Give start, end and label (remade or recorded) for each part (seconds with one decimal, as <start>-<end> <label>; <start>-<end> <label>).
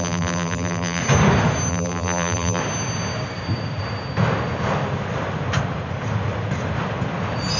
0.0-1.0 remade; 1.0-1.7 recorded; 1.7-2.6 remade; 2.6-7.6 recorded